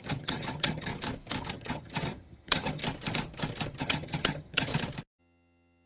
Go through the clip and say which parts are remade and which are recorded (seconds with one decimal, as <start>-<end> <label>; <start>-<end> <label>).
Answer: 0.0-0.9 remade; 0.9-1.5 recorded; 1.5-2.8 remade; 2.8-3.8 recorded; 3.8-4.7 remade; 4.7-5.2 recorded; 5.2-5.9 remade